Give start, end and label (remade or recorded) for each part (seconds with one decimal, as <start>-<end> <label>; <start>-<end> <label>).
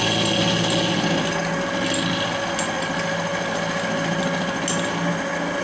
0.0-5.6 recorded